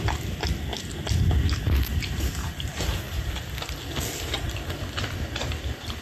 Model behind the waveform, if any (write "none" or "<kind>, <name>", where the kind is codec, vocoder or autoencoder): none